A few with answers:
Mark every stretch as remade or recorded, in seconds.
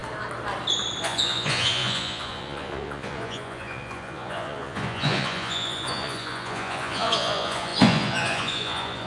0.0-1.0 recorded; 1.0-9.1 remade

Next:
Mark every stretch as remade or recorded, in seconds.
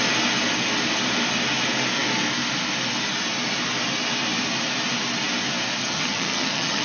0.0-5.8 recorded; 5.8-6.8 remade